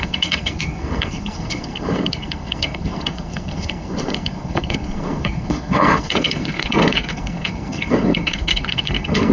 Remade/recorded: remade